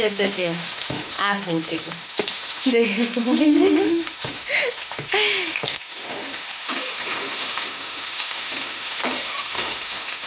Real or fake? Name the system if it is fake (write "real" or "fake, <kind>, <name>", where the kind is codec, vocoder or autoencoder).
fake, autoencoder, DAC-VAE